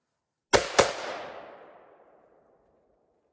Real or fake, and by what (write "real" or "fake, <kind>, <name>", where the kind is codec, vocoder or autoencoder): real